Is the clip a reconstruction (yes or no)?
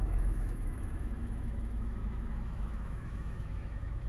yes